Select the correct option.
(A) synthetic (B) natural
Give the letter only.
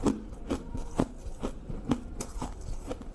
B